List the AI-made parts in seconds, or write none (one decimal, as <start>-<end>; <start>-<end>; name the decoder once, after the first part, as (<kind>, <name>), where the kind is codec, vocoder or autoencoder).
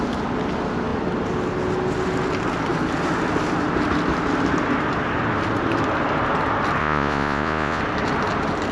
6.8-7.8 (vocoder, Vocos)